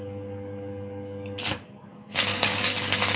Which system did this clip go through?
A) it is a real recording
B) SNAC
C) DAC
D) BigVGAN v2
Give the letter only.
C